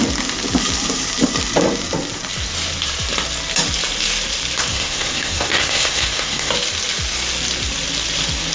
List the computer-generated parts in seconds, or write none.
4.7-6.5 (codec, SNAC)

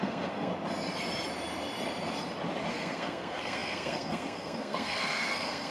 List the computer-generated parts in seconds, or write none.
0.0-0.5 (codec, SNAC); 2.7-5.7

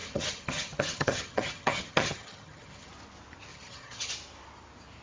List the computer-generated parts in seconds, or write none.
0.0-2.9 (vocoder, HiFi-GAN); 3.5-4.1

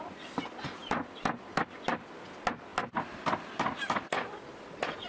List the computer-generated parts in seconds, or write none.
none